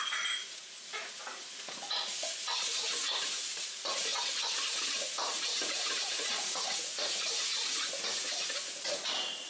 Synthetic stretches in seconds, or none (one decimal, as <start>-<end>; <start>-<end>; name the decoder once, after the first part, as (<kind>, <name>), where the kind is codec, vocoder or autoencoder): 0.0-9.5 (vocoder, Vocos)